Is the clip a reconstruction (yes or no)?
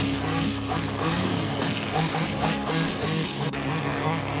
yes